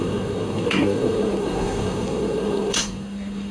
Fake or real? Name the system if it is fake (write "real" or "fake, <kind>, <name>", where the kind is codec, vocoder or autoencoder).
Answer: fake, codec, SNAC